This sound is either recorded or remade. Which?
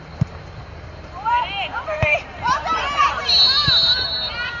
remade